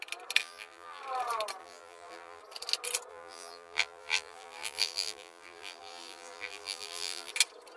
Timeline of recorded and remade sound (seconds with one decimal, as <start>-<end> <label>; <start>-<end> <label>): 0.0-0.4 recorded; 0.4-1.0 remade; 1.0-1.6 recorded; 1.6-2.4 remade; 2.4-3.1 recorded; 3.1-7.3 remade; 7.3-7.8 recorded